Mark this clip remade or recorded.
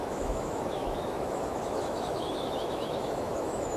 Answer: remade